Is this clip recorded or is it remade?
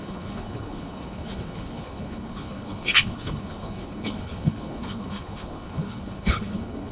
remade